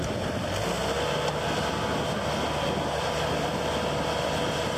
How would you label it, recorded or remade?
recorded